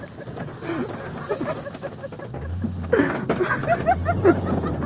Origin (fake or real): real